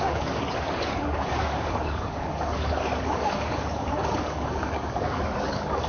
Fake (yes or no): yes